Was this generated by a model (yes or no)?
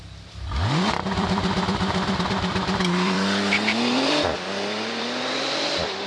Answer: yes